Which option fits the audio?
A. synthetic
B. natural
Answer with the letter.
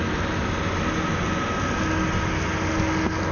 B